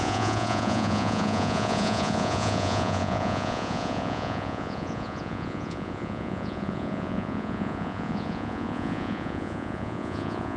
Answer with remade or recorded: remade